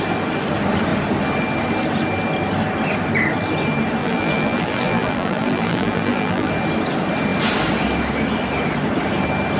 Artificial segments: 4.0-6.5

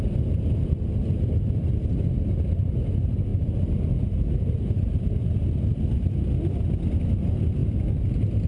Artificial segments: 0.0-1.7; 2.6-3.3; 3.9-8.5

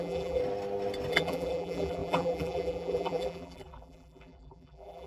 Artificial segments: 0.0-0.4; 1.1-5.1

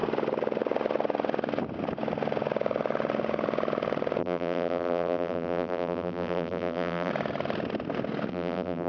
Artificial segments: 4.2-7.1; 8.3-8.9

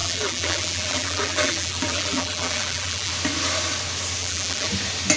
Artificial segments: 0.0-3.1; 4.2-4.7